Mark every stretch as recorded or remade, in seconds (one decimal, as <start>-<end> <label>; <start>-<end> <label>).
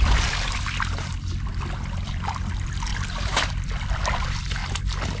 0.0-2.9 recorded; 2.9-3.5 remade; 3.5-5.2 recorded